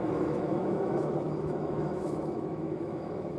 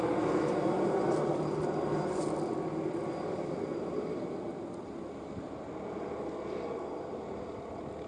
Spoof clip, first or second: first